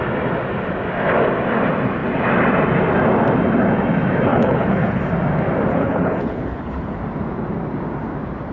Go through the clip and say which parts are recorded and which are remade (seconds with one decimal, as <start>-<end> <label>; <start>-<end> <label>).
0.0-4.3 recorded; 4.3-5.0 remade; 5.0-5.7 recorded; 5.7-7.0 remade; 7.0-8.5 recorded